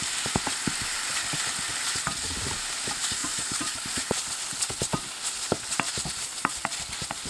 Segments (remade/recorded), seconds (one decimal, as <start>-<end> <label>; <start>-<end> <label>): 0.0-7.3 recorded